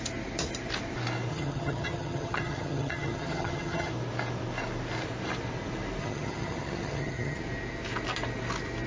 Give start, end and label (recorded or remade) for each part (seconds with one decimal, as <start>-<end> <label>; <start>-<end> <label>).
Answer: 0.0-1.3 recorded; 1.3-3.9 remade; 3.9-6.0 recorded; 6.0-7.4 remade; 7.4-8.9 recorded